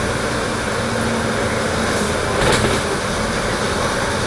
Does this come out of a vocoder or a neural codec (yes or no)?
no